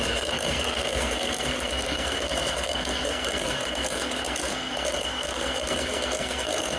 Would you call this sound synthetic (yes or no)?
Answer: yes